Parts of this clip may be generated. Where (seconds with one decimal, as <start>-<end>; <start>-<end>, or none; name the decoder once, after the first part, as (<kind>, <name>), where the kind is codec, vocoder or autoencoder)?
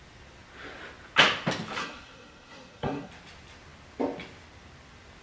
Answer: 1.8-3.1 (codec, SNAC)